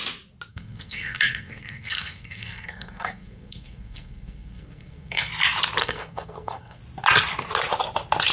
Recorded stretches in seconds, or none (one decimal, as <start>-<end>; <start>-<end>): 0.0-0.5; 5.3-5.8; 6.8-8.3